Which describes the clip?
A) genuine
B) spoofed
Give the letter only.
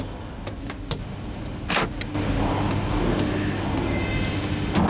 A